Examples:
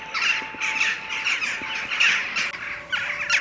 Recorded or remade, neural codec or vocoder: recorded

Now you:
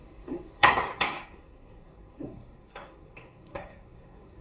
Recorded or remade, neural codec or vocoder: remade, codec, SNAC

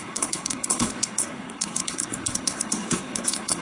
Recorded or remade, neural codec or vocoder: remade, codec, SNAC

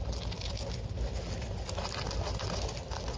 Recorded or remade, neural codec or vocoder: recorded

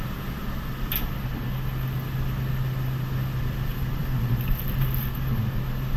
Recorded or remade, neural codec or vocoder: recorded